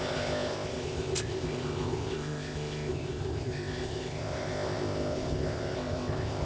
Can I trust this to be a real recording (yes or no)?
no